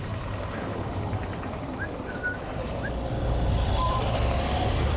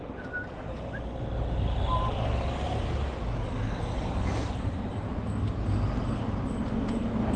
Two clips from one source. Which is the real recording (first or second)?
second